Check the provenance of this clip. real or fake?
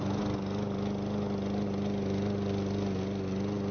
real